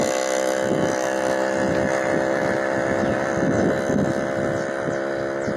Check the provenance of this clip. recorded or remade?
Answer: recorded